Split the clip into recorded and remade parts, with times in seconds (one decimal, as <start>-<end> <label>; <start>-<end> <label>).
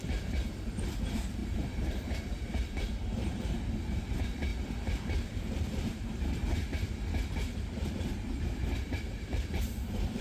0.0-4.5 remade; 4.5-7.9 recorded; 7.9-10.2 remade